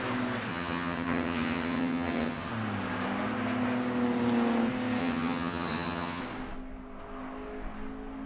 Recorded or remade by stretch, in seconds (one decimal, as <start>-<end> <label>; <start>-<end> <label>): 0.0-0.5 recorded; 0.5-2.5 remade; 2.5-5.0 recorded; 5.0-6.2 remade; 6.2-8.3 recorded